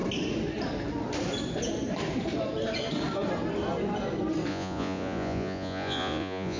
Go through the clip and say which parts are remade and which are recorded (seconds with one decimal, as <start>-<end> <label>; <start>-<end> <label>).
0.0-4.5 recorded; 4.5-6.6 remade